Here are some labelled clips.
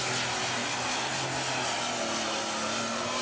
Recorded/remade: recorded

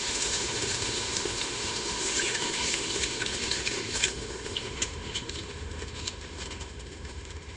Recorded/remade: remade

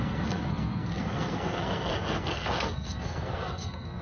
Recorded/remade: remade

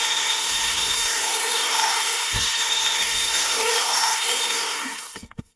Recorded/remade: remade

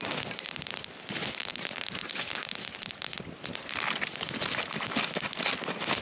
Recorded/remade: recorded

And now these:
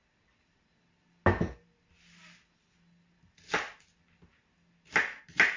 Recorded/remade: recorded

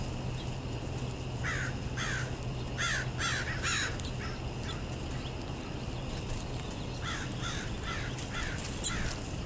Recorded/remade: recorded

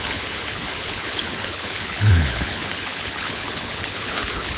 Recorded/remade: remade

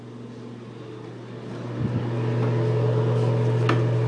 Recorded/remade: recorded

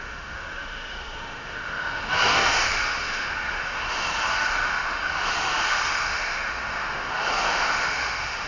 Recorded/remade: remade